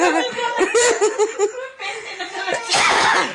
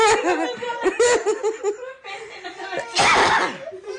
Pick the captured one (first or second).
second